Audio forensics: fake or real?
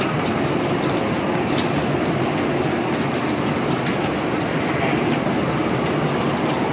real